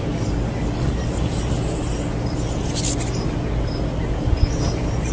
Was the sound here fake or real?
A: real